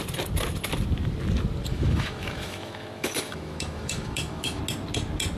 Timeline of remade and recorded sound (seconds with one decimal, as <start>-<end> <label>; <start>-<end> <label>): 0.0-1.7 recorded; 1.7-4.6 remade; 4.6-5.4 recorded